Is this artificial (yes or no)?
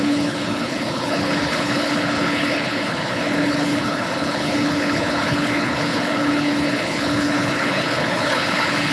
yes